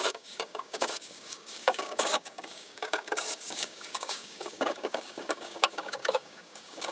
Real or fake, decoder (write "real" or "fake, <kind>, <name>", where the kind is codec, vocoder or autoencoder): fake, codec, DAC